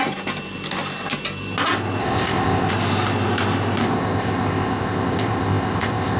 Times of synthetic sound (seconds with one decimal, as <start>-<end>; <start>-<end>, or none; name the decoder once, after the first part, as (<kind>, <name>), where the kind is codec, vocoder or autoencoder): 2.0-2.7 (codec, ZipCodec); 3.8-6.2